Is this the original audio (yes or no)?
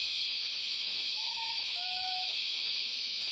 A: no